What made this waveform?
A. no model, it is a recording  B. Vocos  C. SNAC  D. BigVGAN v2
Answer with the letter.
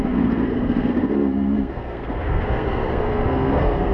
C